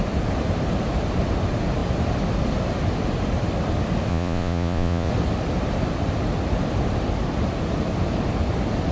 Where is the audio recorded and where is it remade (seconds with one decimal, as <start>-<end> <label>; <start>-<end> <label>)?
0.0-4.1 recorded; 4.1-5.1 remade; 5.1-8.9 recorded